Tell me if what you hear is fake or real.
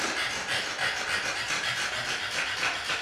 real